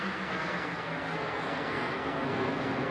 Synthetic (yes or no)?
yes